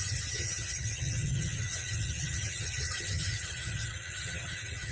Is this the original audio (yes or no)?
no